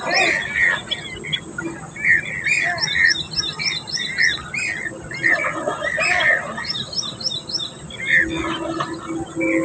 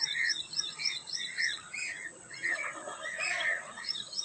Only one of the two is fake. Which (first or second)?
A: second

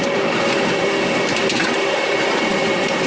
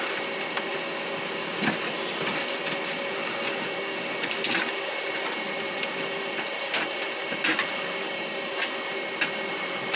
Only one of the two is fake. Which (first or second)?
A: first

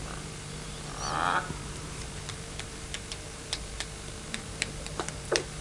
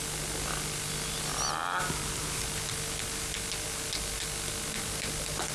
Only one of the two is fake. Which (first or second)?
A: first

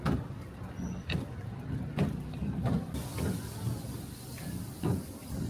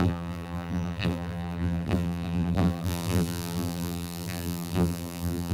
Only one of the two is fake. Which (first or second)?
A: second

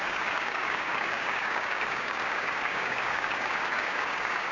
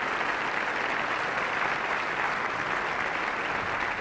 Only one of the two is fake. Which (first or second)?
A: first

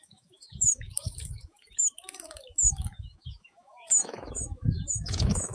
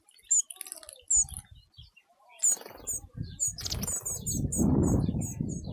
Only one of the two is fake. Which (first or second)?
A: first